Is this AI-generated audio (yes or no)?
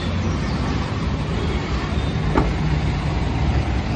no